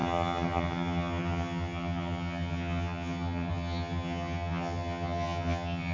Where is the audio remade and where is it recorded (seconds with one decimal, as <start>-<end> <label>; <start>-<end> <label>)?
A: 0.0-5.9 remade